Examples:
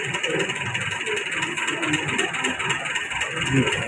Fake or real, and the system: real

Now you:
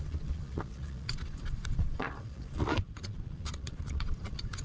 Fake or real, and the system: fake, vocoder, Vocos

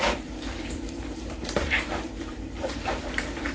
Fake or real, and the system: fake, vocoder, BigVGAN v2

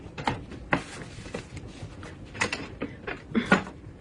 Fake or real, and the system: real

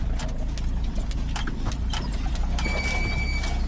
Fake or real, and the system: real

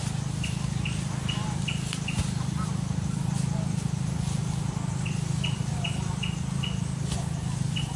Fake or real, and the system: real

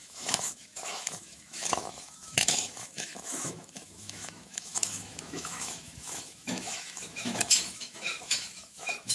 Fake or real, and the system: fake, autoencoder, DAC-VAE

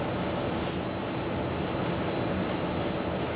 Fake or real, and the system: real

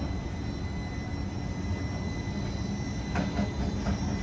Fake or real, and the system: real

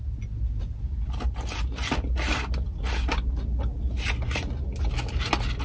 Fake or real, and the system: real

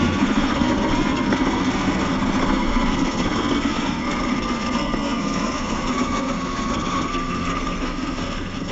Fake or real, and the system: fake, codec, SNAC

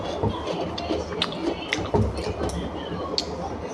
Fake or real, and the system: real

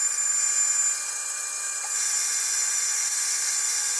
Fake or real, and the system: fake, vocoder, BigVGAN v2